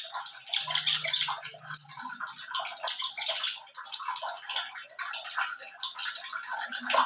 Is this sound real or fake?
real